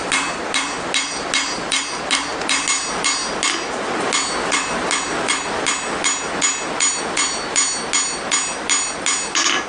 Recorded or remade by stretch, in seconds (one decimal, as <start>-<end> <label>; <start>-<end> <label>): 0.0-9.7 recorded